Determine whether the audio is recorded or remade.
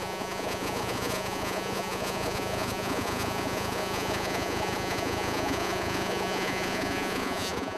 remade